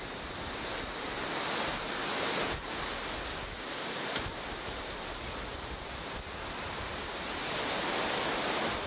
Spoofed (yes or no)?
no